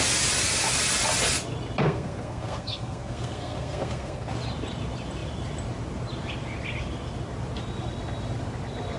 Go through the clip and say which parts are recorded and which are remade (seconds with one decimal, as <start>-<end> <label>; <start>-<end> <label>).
0.0-1.8 recorded; 1.8-4.3 remade; 4.3-9.0 recorded